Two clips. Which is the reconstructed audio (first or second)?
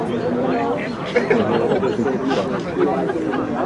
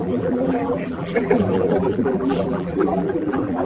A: second